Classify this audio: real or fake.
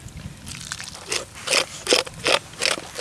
real